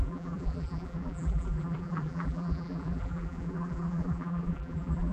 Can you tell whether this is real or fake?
fake